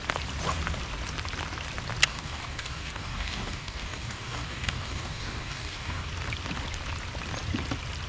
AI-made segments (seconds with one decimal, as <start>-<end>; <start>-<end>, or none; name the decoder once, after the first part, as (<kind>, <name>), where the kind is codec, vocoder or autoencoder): 2.1-6.1 (codec, DAC)